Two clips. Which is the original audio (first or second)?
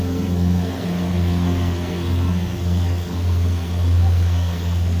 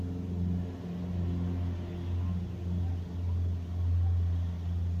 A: second